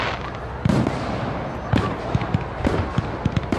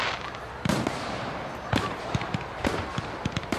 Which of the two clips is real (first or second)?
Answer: first